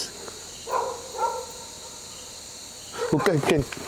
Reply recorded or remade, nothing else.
recorded